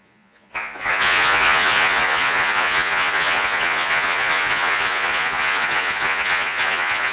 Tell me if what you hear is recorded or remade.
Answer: remade